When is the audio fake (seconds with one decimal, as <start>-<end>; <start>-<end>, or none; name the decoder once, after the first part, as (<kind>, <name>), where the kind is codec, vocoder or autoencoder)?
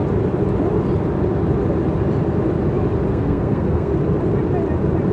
3.1-3.9 (codec, SNAC)